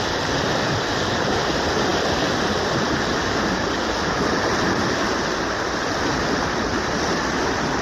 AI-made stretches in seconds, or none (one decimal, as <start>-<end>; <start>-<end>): none